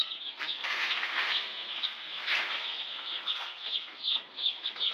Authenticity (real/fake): fake